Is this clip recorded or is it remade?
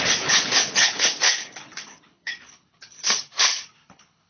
remade